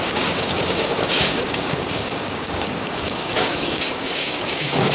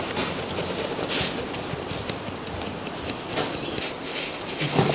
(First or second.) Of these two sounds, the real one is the second